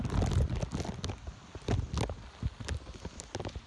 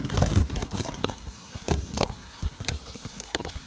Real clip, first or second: first